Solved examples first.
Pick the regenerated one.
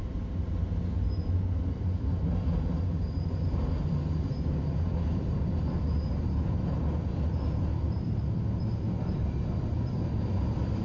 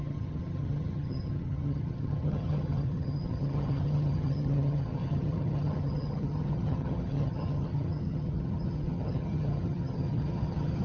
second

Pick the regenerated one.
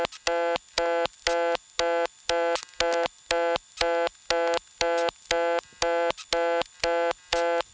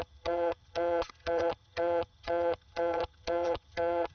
second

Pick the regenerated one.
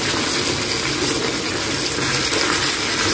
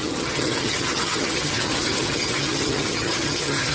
second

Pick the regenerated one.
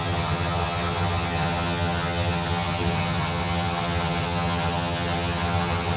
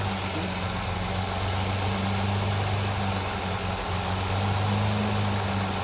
first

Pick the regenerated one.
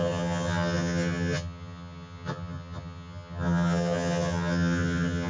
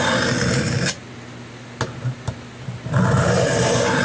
first